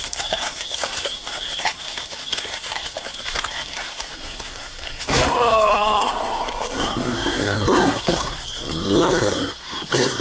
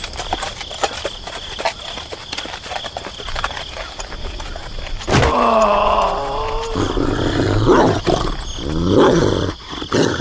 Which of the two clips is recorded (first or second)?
second